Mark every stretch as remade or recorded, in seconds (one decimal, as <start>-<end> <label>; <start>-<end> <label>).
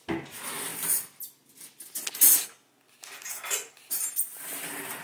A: 0.0-0.7 recorded; 0.7-1.2 remade; 1.2-5.0 recorded